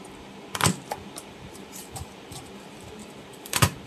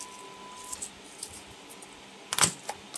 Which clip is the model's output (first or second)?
first